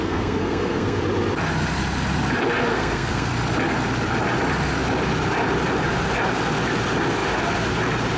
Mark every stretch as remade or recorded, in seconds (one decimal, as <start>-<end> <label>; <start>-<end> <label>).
0.0-1.0 remade; 1.0-2.7 recorded; 2.7-3.3 remade; 3.3-8.2 recorded